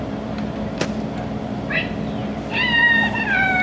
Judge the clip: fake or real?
real